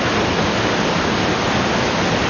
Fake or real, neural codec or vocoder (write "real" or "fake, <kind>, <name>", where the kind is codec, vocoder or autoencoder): real